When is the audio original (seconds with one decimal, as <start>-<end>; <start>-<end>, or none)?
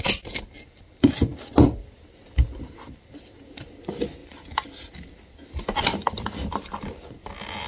0.0-4.2